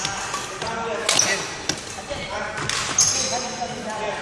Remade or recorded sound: recorded